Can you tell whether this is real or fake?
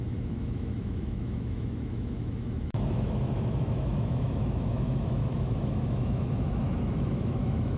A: fake